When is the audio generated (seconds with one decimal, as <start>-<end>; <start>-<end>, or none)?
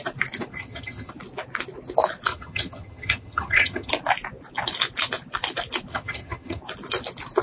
0.5-1.1; 2.3-3.9; 5.9-6.6